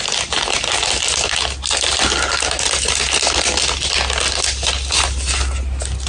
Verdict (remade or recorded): recorded